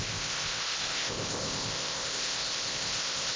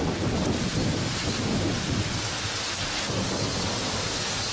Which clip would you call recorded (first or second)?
second